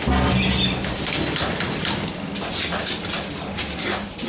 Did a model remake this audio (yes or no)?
no